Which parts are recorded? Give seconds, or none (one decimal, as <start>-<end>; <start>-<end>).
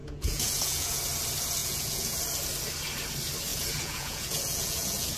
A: 1.0-1.6; 2.2-3.5